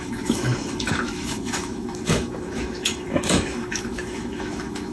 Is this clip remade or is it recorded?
remade